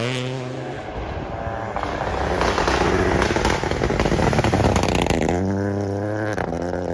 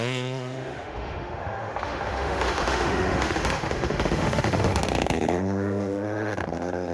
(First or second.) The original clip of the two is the first